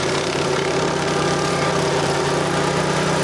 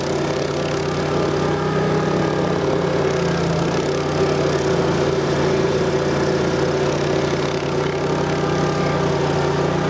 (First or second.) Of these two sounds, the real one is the second